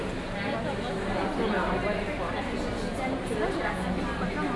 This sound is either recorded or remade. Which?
recorded